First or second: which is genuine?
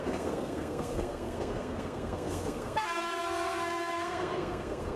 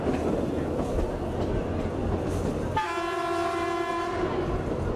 second